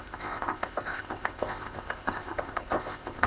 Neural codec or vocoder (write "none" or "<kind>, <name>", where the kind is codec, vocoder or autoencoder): codec, ZipCodec